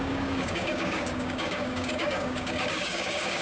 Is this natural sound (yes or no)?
no